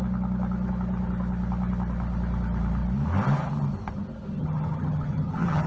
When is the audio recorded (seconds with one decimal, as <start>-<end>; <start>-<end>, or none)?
0.0-4.4